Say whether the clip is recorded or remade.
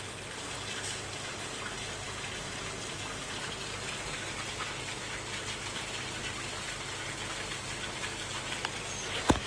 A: recorded